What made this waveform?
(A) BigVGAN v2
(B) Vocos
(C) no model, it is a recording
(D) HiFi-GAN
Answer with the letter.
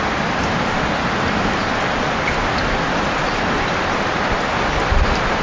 A